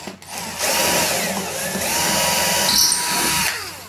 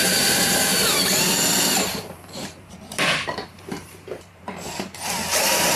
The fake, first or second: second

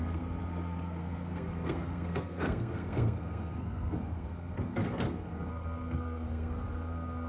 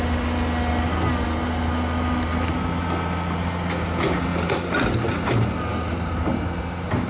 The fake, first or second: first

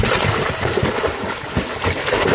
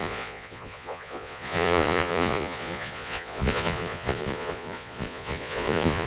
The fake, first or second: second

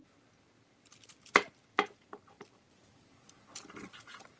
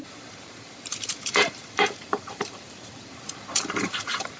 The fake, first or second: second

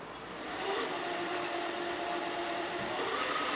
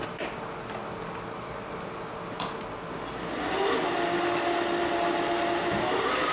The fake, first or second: first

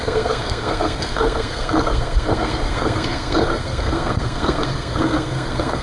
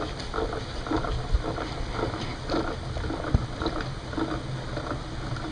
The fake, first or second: first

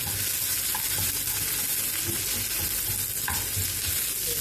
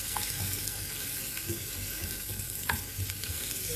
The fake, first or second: second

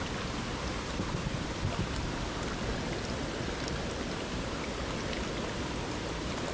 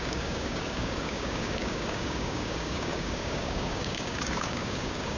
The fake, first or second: second